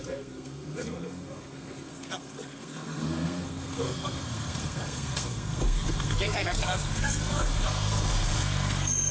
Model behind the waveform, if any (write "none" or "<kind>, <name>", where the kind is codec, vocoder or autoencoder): codec, SNAC